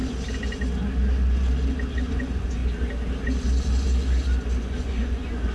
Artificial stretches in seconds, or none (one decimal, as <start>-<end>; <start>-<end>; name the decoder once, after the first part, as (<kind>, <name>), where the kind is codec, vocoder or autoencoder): 2.1-2.6 (vocoder, Vocos); 4.6-5.5